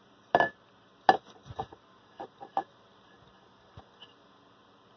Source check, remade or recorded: recorded